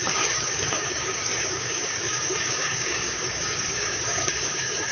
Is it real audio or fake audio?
fake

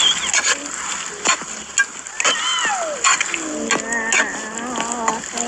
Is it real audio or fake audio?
real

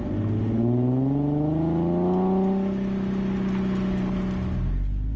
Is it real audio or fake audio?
real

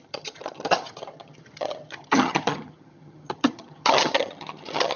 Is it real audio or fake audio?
fake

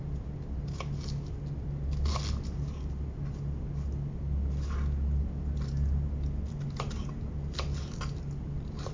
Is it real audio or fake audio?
real